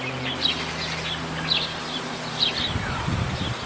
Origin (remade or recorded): recorded